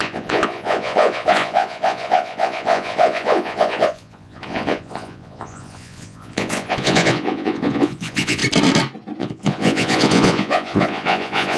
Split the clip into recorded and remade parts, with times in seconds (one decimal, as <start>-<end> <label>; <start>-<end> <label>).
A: 0.0-8.4 remade; 8.4-9.2 recorded; 9.2-11.6 remade